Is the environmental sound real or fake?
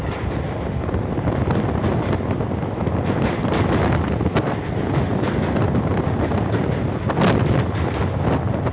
real